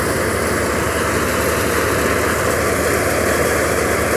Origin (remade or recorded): recorded